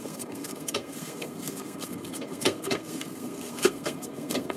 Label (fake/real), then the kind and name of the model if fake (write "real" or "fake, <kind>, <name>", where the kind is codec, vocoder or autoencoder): fake, codec, SNAC